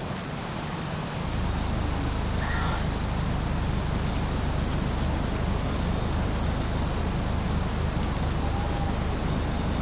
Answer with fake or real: real